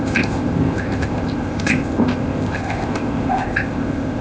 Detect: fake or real fake